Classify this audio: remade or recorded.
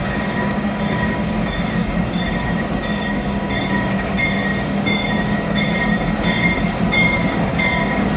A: remade